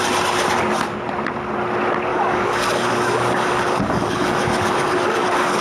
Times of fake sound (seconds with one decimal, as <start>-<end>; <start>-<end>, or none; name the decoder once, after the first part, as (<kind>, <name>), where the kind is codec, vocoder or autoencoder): 2.1-5.6 (codec, DAC)